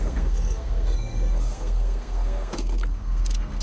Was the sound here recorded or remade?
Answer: remade